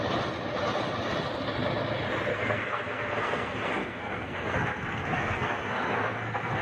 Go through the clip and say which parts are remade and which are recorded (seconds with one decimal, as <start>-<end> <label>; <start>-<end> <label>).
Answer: 0.0-2.3 recorded; 2.3-6.6 remade